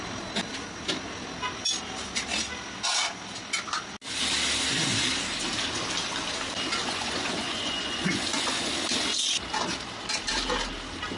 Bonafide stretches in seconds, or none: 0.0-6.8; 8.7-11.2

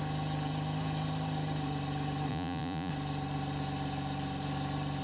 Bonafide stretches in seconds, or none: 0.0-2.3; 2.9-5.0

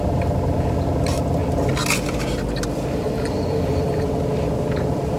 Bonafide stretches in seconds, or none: 0.0-5.2

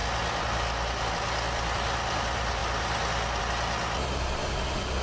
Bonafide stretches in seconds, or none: 0.0-5.0